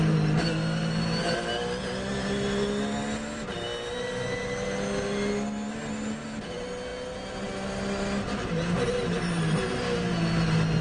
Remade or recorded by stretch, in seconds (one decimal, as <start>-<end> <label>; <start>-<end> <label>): 0.0-10.8 recorded